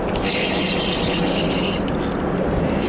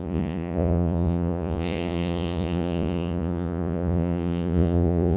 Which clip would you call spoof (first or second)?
second